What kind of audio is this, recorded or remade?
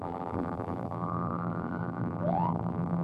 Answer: remade